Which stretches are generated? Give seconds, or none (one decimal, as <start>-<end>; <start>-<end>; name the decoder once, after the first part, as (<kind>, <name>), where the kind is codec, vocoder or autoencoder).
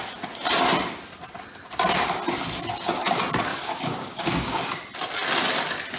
3.5-4.6 (codec, DAC)